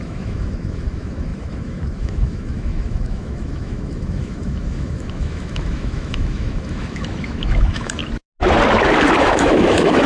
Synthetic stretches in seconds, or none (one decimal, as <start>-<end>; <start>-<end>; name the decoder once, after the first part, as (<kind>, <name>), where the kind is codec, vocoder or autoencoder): 0.0-8.0 (autoencoder, DAC-VAE); 9.2-10.1